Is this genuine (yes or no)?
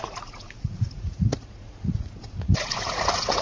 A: no